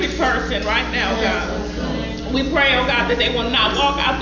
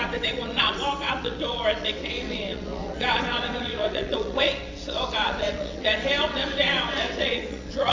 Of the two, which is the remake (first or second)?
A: second